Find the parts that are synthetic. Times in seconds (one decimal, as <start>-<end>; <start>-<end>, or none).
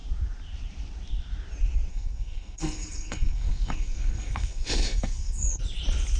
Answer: 1.9-5.6